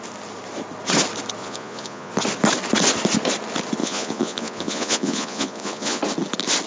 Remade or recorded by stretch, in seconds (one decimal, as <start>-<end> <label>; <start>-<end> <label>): 0.0-1.4 recorded; 1.4-2.1 remade; 2.1-3.8 recorded; 3.8-6.0 remade; 6.0-6.7 recorded

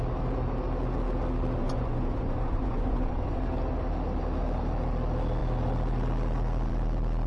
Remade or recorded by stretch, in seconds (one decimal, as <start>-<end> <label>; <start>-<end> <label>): 0.0-1.6 recorded; 1.6-3.4 remade; 3.4-7.3 recorded

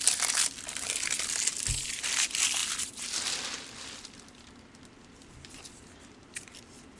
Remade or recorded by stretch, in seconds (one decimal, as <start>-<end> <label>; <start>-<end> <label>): 0.0-7.0 recorded

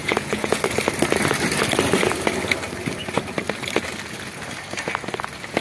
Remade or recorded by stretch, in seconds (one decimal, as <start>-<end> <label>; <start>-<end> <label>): 0.0-0.6 remade; 0.6-5.6 recorded

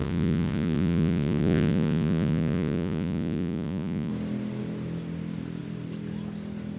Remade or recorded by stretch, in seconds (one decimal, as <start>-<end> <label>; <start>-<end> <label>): 0.0-4.1 remade; 4.1-6.8 recorded

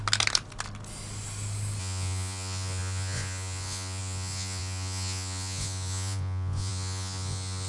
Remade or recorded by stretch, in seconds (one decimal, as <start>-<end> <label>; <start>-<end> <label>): 0.0-1.8 recorded; 1.8-7.7 remade

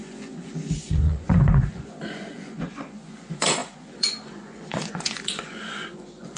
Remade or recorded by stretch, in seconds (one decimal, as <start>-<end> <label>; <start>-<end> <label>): 0.0-6.4 remade

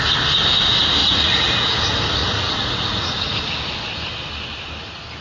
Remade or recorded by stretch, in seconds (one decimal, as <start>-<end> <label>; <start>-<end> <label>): 0.0-1.0 recorded; 1.0-1.8 remade; 1.8-2.2 recorded; 2.2-3.5 remade; 3.5-5.2 recorded